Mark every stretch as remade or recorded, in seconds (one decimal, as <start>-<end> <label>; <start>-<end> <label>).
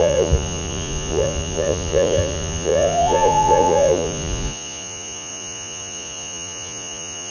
0.0-7.3 remade